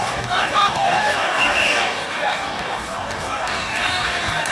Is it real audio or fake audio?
fake